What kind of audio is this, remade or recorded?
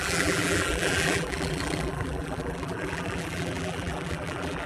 remade